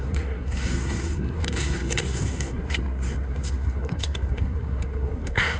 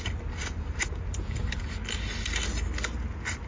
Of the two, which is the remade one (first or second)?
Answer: first